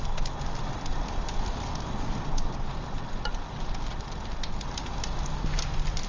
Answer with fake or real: real